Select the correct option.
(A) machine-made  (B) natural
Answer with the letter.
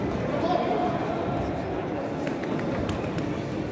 B